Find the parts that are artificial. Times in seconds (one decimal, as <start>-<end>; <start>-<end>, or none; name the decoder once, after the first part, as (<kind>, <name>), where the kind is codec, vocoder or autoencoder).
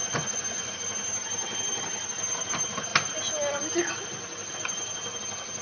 0.0-0.7 (vocoder, Vocos)